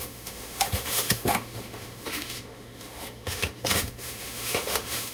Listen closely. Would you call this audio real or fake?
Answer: fake